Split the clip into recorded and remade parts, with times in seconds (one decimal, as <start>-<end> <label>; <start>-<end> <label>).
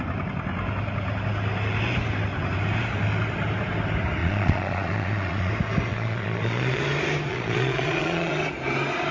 0.0-4.2 recorded; 4.2-5.5 remade; 5.5-5.9 recorded; 5.9-6.8 remade; 6.8-7.3 recorded; 7.3-8.3 remade; 8.3-9.1 recorded